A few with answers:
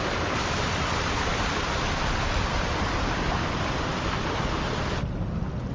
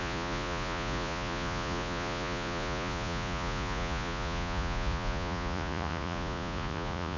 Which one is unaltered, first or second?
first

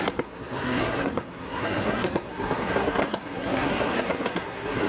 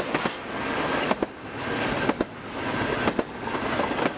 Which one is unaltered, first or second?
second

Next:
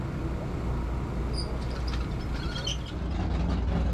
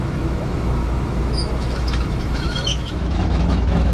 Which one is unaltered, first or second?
first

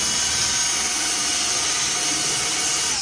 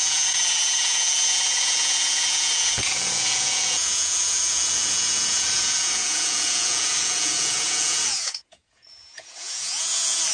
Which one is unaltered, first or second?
first